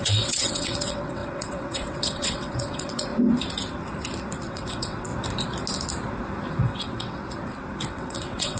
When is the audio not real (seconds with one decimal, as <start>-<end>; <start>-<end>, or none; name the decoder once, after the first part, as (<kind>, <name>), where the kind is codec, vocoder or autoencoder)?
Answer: 0.0-3.1 (vocoder, WaveNeXt); 4.5-5.1; 6.6-7.2; 7.9-8.6